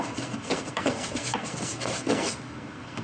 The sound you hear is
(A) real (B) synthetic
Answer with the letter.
B